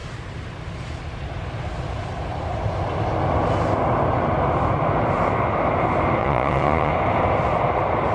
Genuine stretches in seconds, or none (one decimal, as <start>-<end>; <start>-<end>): 0.0-6.2; 6.9-8.1